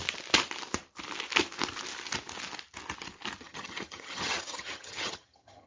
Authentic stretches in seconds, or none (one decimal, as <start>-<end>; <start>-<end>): 0.0-3.4